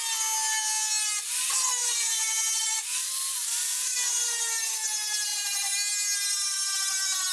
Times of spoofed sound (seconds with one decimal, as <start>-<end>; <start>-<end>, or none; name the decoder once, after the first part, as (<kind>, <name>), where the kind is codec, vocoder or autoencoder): 1.8-2.6 (vocoder, BigVGAN v2); 3.4-4.6